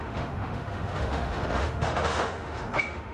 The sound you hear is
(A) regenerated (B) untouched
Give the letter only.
A